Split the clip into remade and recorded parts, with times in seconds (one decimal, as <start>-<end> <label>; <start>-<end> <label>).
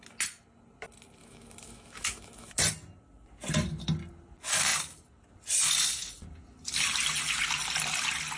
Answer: 0.0-1.2 recorded; 1.2-2.6 remade; 2.6-8.4 recorded